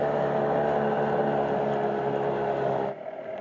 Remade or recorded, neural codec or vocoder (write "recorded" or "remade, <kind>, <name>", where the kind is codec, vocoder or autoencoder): recorded